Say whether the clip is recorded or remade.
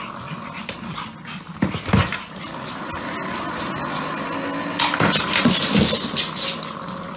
recorded